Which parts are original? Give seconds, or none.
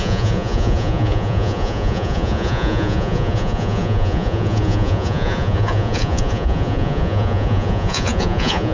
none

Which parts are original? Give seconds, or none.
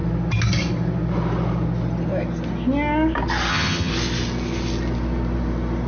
0.0-3.5; 3.9-5.9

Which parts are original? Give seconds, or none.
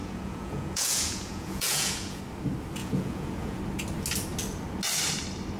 2.2-2.8; 3.6-5.6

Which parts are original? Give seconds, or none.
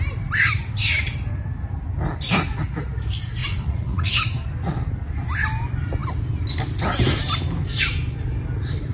0.0-3.4; 4.1-8.9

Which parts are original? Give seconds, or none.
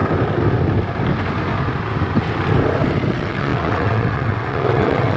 0.0-3.1